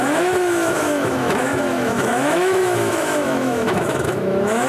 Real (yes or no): no